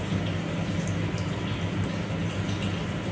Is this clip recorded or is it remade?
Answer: recorded